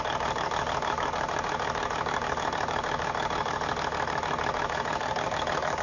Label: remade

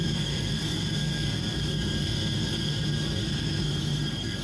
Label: remade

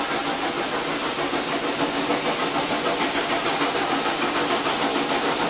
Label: recorded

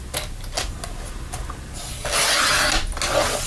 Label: recorded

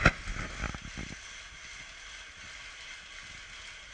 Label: recorded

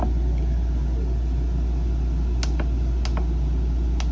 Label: recorded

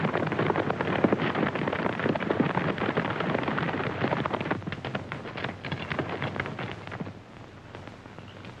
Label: recorded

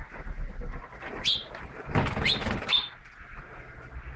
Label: recorded